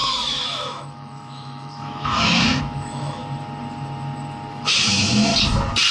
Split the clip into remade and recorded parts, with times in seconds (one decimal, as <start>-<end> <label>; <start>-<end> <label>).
0.0-3.2 remade; 3.2-4.5 recorded; 4.5-5.3 remade; 5.3-5.9 recorded